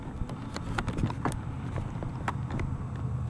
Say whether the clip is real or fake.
real